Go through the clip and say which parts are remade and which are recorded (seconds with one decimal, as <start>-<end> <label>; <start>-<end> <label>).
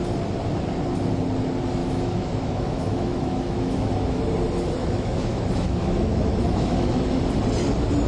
0.0-1.8 recorded; 1.8-4.2 remade; 4.2-4.8 recorded; 4.8-7.2 remade; 7.2-8.1 recorded